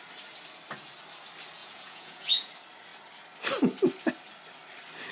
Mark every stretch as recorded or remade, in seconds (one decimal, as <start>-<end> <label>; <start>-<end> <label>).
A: 0.0-1.6 recorded; 1.6-2.5 remade; 2.5-5.1 recorded